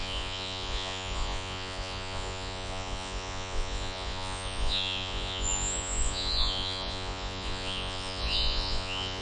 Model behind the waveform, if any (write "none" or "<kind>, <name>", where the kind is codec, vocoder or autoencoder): vocoder, Vocos